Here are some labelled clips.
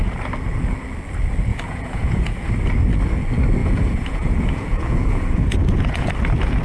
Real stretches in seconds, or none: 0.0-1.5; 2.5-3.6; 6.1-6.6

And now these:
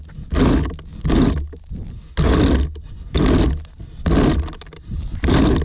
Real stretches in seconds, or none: 0.0-5.6